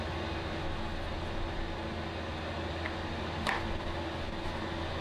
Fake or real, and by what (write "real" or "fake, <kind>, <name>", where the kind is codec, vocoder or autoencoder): real